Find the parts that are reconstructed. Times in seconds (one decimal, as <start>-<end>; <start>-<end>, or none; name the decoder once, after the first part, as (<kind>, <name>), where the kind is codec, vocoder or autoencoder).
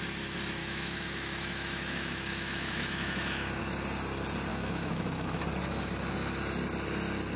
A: 0.6-3.6 (autoencoder, DAC-VAE); 4.5-5.4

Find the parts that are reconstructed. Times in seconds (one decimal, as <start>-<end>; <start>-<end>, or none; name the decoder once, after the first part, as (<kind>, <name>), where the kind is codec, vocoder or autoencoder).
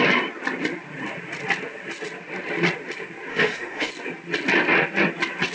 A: 3.3-3.9 (autoencoder, DAC-VAE)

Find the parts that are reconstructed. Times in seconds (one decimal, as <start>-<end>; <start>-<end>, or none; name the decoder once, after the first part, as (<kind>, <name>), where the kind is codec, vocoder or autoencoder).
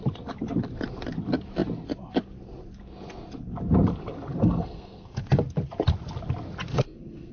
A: 4.4-5.2 (codec, SNAC); 6.7-7.3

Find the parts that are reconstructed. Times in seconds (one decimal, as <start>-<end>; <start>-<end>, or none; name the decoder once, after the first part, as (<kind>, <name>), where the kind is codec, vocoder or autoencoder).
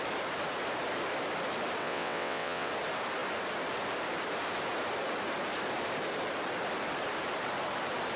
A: 1.8-2.7 (vocoder, WaveNeXt)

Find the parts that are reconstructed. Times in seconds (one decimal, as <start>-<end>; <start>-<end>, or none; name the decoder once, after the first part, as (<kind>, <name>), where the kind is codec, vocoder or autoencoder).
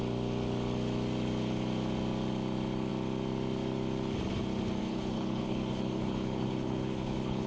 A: 4.8-7.5 (codec, HILCodec)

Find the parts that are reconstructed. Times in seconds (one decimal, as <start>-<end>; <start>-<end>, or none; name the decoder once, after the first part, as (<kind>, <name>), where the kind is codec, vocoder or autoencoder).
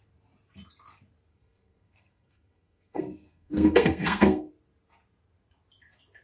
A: 1.3-4.5 (codec, SNAC)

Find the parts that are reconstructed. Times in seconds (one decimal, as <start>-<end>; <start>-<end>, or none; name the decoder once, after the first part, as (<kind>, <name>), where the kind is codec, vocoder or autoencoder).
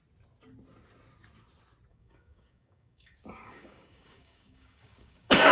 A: 1.9-5.5 (codec, DAC)